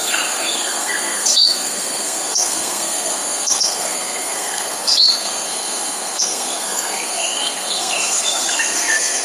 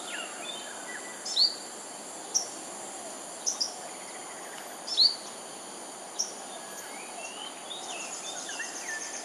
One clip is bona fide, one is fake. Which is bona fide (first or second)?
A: second